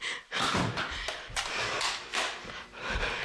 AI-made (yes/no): no